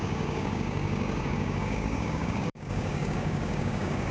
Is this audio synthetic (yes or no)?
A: yes